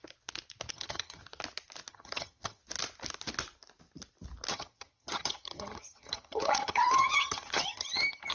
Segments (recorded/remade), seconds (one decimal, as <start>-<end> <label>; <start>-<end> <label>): 0.0-0.7 recorded; 0.7-1.2 remade; 1.2-1.9 recorded; 1.9-2.6 remade; 2.6-4.5 recorded; 4.5-8.3 remade